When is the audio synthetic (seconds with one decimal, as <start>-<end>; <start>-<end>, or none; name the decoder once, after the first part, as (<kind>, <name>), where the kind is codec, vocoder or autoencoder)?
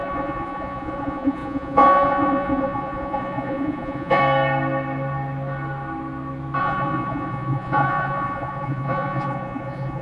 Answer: 0.0-4.2 (vocoder, Vocos); 6.6-10.0